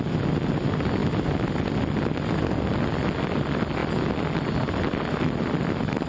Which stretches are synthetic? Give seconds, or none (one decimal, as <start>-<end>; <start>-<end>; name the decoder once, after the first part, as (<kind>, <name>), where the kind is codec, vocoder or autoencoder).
none